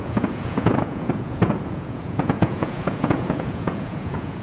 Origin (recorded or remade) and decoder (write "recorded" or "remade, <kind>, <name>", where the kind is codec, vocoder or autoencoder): remade, vocoder, Vocos